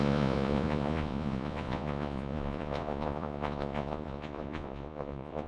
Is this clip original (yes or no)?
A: no